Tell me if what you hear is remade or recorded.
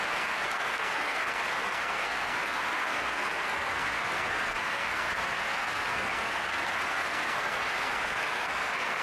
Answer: remade